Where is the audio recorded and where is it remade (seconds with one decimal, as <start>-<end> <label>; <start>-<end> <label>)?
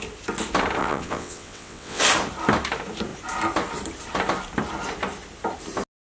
0.0-0.8 recorded; 0.8-2.0 remade; 2.0-6.0 recorded